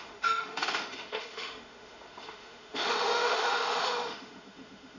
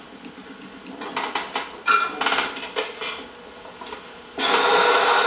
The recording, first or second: second